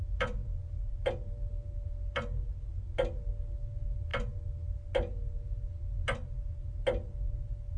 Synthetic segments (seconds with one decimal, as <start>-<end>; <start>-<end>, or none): none